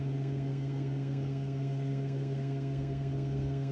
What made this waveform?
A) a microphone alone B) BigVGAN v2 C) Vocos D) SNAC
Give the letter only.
D